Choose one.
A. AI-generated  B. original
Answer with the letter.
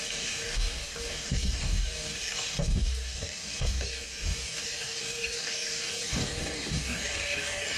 A